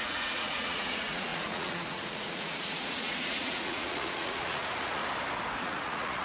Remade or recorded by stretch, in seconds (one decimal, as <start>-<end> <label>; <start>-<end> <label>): 0.0-5.0 remade; 5.0-5.6 recorded; 5.6-6.2 remade